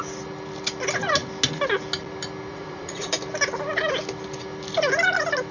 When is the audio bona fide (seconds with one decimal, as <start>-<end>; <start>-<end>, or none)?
0.0-2.5; 3.1-5.5